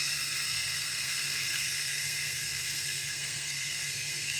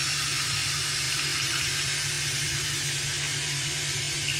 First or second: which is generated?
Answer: first